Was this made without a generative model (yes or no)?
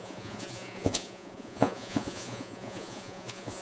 no